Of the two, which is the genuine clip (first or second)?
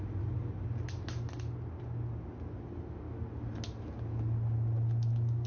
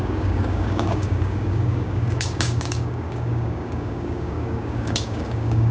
first